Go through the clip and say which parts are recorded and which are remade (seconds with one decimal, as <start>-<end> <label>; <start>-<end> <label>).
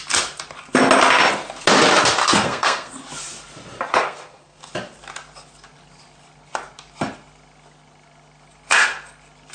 0.0-2.2 recorded; 2.2-2.9 remade; 2.9-3.9 recorded; 3.9-4.6 remade; 4.6-9.5 recorded